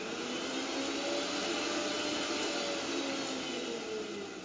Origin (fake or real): real